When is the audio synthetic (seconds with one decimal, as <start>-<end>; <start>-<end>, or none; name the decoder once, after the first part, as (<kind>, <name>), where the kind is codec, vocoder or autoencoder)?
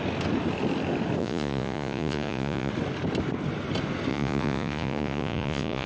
1.2-2.7 (vocoder, Vocos); 4.1-5.9